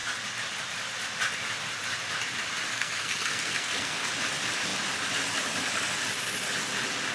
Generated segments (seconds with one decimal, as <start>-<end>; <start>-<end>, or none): 2.7-4.1